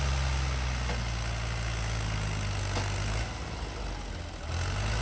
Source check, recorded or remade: recorded